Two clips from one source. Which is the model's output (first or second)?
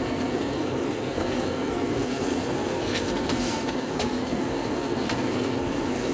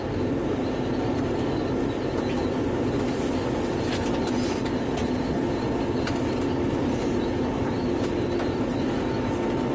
first